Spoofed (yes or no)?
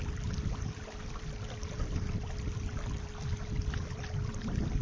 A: yes